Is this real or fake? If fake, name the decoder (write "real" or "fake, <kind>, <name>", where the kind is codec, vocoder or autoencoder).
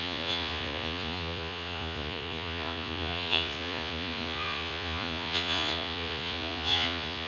fake, vocoder, Vocos